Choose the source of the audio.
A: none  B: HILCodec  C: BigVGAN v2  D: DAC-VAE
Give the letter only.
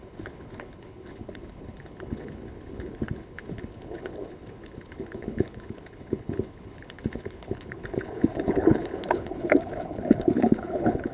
B